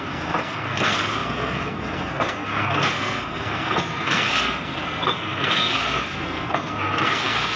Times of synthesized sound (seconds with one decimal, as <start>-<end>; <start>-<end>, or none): 0.0-7.6

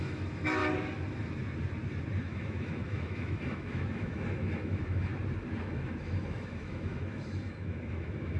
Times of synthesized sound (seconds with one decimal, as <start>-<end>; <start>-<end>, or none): 0.0-0.6; 2.2-5.1; 5.6-8.4

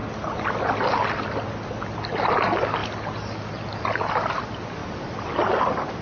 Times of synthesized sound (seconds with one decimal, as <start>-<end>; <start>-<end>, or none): none

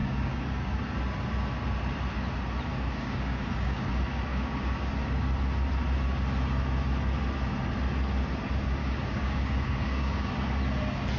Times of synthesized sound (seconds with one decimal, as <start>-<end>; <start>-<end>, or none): 0.0-0.8; 2.7-3.9; 4.3-4.9; 8.8-10.3

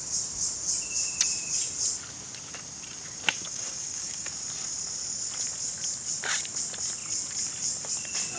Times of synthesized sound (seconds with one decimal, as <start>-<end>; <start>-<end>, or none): 3.5-4.3

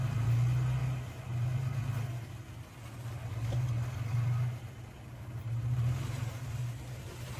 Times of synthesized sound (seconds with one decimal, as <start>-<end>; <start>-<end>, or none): none